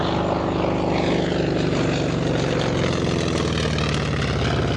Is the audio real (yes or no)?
yes